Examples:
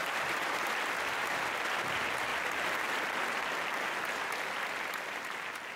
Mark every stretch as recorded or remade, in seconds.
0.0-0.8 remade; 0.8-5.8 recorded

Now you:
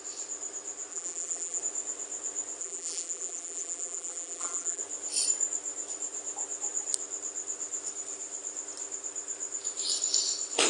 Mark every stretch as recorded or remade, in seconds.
0.0-0.9 recorded; 0.9-1.6 remade; 1.6-2.6 recorded; 2.6-4.8 remade; 4.8-10.7 recorded